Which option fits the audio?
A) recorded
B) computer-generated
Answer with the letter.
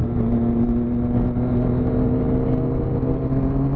A